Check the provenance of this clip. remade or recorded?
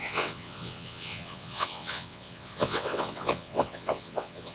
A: remade